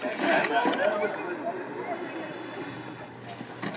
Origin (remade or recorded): recorded